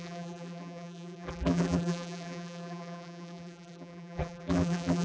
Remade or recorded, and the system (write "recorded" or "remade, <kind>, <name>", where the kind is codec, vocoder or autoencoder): remade, vocoder, BigVGAN v2